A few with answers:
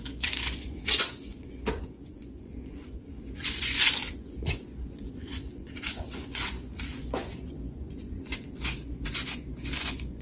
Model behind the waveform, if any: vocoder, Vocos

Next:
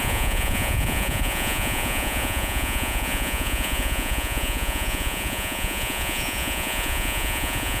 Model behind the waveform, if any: vocoder, Vocos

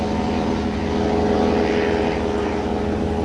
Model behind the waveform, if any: none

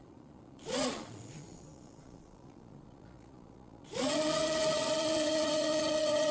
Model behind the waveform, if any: vocoder, Vocos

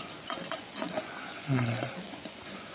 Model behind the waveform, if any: vocoder, Vocos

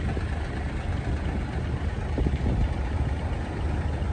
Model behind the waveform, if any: none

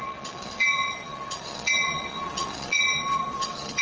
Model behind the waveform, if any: vocoder, Vocos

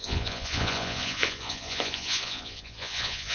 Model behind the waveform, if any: vocoder, Vocos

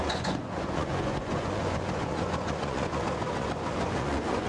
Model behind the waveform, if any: vocoder, Vocos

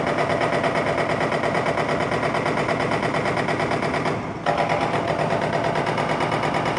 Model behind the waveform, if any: none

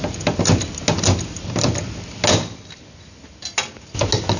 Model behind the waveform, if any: none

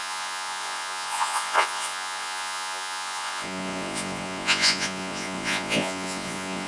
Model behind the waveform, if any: vocoder, Vocos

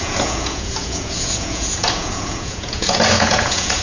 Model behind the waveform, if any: vocoder, Vocos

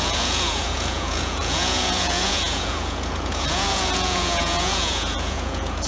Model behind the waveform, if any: vocoder, Vocos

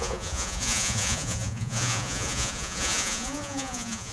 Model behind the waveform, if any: vocoder, Vocos